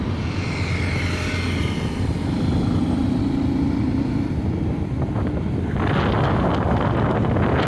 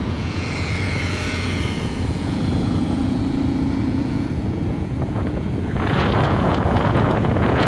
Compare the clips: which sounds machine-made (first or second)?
second